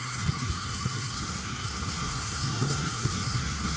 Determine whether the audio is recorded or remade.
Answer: remade